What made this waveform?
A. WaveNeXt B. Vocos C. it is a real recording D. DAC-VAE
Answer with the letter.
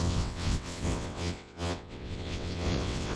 A